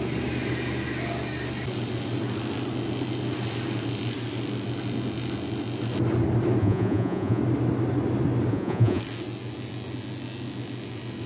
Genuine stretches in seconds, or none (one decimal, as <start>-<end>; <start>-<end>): 0.0-6.6; 7.4-8.5; 9.0-11.3